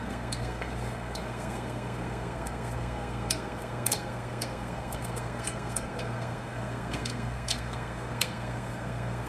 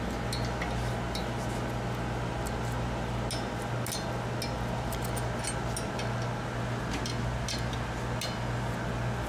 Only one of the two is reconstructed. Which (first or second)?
first